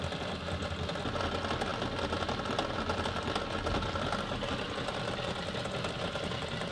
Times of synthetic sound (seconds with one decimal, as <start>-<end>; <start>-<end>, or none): none